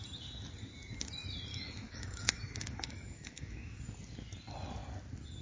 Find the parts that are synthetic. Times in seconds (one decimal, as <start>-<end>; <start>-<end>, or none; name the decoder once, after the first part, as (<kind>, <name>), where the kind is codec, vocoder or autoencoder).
1.5-3.8 (autoencoder, DAC-VAE)